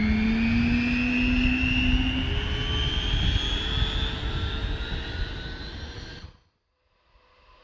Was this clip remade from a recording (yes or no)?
no